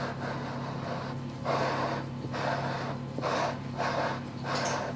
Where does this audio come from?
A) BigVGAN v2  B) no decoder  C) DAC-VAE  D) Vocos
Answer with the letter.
B